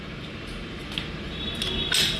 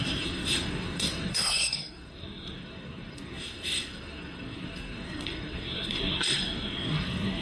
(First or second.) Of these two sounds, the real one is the first